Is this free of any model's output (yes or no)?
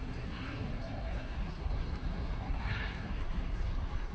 no